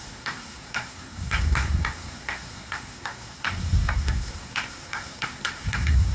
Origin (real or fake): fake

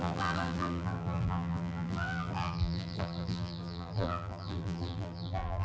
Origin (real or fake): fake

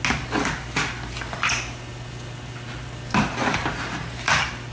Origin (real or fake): real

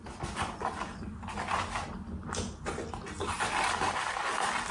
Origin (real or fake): real